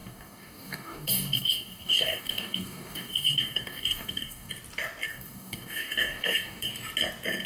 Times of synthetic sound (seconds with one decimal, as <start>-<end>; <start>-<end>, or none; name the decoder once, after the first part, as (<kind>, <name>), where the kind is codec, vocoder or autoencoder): 0.0-4.5 (codec, DAC); 5.1-6.7